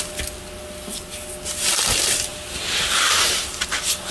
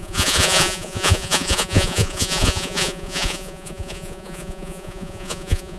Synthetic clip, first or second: second